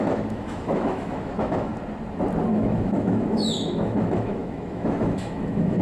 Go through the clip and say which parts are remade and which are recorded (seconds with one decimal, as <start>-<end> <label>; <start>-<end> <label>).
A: 0.0-1.7 remade; 1.7-2.5 recorded; 2.5-5.8 remade